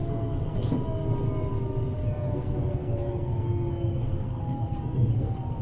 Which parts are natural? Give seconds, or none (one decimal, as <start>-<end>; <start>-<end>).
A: 0.7-2.0